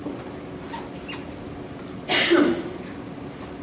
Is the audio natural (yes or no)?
yes